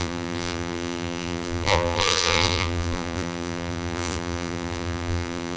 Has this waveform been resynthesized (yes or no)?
yes